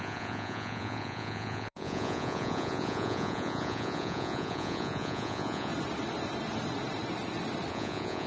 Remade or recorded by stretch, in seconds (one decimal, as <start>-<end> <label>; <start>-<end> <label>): 0.0-5.7 remade; 5.7-7.7 recorded; 7.7-8.3 remade